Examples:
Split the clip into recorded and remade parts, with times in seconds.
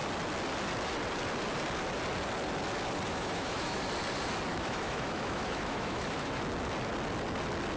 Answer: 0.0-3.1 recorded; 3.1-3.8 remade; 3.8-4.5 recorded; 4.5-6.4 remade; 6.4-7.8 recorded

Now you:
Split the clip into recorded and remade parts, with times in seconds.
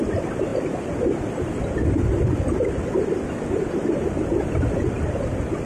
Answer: 0.0-5.7 recorded